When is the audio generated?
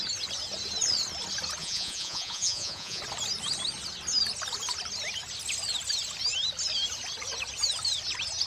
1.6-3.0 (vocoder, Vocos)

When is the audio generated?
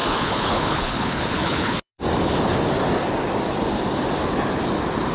0.0-1.9 (codec, HILCodec)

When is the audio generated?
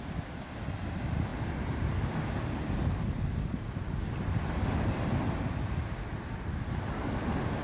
none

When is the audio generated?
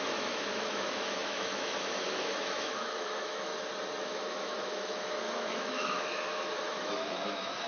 0.0-3.5 (autoencoder, DAC-VAE); 4.0-7.7